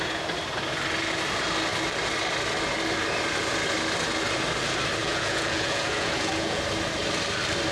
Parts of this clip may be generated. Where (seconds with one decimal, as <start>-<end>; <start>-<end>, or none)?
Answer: 5.0-6.6